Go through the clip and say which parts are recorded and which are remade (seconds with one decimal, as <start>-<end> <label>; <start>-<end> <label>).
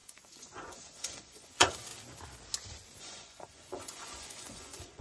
0.0-1.9 remade; 1.9-3.0 recorded; 3.0-5.0 remade